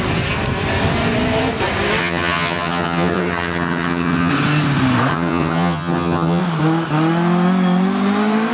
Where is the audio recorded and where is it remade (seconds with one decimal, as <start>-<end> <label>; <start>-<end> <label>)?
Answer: 0.0-2.0 recorded; 2.0-4.3 remade; 4.3-5.1 recorded; 5.1-6.4 remade; 6.4-8.5 recorded